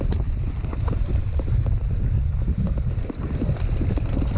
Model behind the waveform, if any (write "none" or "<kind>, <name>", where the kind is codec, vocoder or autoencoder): none